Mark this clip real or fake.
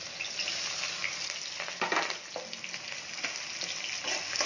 real